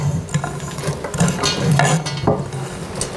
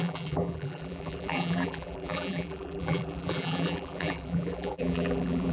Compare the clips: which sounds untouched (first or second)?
first